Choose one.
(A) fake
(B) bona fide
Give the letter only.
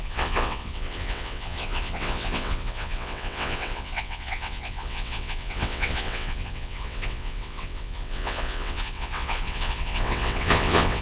A